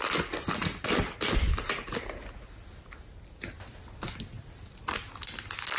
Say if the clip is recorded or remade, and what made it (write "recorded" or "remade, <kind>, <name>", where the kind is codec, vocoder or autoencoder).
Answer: recorded